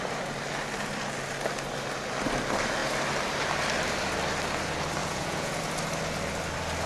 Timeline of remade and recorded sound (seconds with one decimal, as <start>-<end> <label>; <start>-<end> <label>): 0.0-5.0 recorded; 5.0-5.6 remade; 5.6-6.9 recorded